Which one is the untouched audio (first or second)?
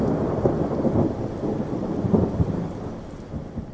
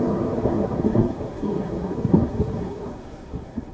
first